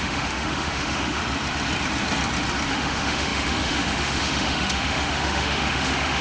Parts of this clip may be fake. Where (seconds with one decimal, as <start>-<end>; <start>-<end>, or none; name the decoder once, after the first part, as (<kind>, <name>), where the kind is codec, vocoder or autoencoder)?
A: 0.0-1.2 (autoencoder, DAC-VAE); 2.7-6.2